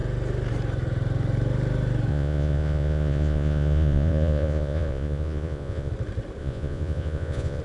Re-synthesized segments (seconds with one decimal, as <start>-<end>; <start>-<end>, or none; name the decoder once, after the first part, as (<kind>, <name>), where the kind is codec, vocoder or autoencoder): 2.1-5.9 (vocoder, Vocos); 6.4-7.6

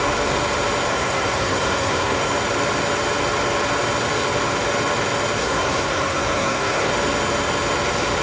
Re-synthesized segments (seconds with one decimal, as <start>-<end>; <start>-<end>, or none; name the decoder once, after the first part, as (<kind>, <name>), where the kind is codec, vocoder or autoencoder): 0.9-2.3 (codec, SNAC); 5.4-6.9

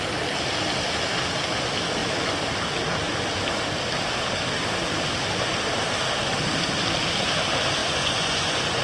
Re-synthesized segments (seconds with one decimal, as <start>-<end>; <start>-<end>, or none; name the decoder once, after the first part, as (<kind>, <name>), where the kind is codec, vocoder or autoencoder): 7.8-8.8 (vocoder, Vocos)

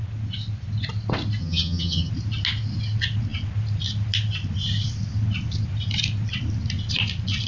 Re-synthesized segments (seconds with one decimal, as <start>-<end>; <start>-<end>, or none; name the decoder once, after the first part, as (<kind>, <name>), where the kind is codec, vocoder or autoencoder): 1.4-2.1 (vocoder, HiFi-GAN)

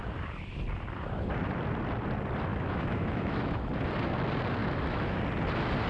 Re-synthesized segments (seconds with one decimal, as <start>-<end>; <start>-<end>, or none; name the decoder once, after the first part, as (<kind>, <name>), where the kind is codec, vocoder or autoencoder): 2.5-3.7 (autoencoder, DAC-VAE); 4.6-5.2

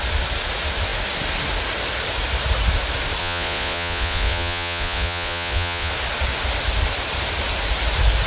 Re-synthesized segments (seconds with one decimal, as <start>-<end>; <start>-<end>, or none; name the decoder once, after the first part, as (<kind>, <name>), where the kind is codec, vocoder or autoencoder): 3.2-5.9 (vocoder, Vocos)